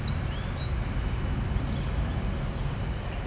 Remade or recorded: recorded